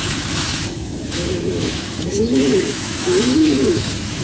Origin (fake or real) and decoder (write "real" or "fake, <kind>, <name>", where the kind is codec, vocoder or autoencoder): fake, autoencoder, DAC-VAE